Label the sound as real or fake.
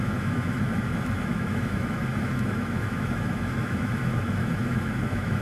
fake